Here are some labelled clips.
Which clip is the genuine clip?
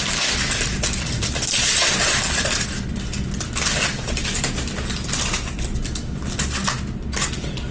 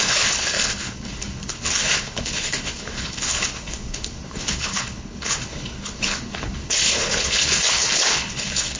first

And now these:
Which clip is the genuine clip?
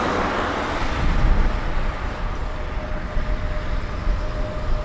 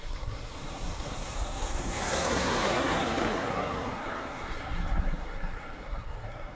first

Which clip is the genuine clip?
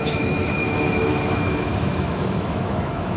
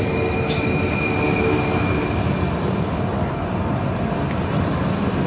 second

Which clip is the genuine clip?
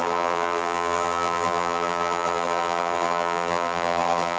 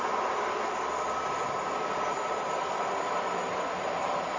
second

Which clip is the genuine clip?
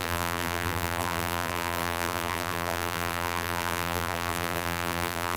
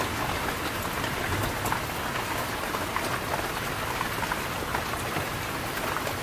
second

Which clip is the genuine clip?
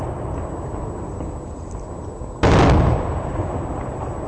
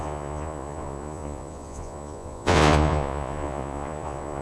first